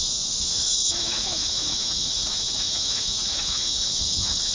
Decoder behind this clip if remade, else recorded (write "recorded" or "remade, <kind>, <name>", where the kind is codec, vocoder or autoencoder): remade, autoencoder, DAC-VAE